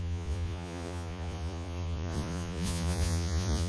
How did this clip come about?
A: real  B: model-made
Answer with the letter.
B